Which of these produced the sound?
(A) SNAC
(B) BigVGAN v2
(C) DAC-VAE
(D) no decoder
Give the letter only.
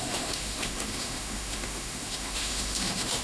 C